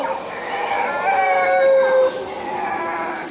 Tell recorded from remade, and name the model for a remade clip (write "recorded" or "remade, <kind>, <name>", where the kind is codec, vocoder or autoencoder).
recorded